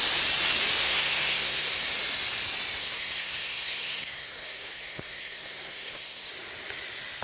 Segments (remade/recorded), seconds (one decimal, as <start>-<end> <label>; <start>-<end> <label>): 0.0-0.8 recorded; 0.8-1.8 remade; 1.8-2.8 recorded; 2.8-6.3 remade; 6.3-7.2 recorded

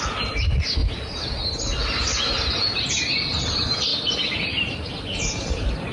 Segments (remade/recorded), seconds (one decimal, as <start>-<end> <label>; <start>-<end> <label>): 0.0-5.9 recorded

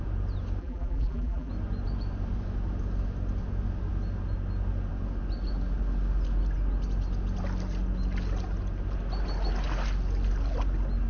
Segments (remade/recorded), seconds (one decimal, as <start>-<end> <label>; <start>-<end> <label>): 0.0-0.6 recorded; 0.6-1.5 remade; 1.5-11.1 recorded